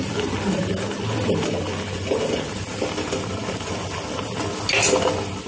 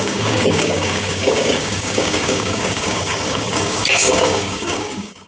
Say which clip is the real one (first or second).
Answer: first